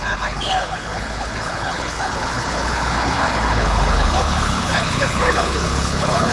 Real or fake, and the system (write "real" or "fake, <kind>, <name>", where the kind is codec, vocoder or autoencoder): fake, codec, HILCodec